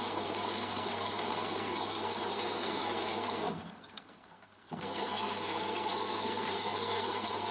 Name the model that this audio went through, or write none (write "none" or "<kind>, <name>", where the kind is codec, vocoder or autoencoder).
codec, SNAC